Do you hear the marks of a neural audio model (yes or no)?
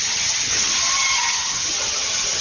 yes